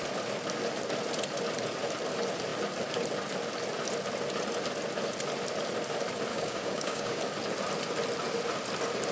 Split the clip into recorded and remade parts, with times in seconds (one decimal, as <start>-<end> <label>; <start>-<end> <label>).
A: 0.0-6.3 recorded; 6.3-7.2 remade; 7.2-9.1 recorded